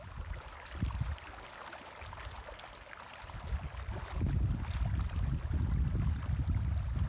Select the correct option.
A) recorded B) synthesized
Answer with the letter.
A